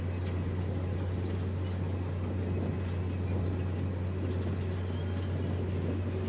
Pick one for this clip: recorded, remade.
recorded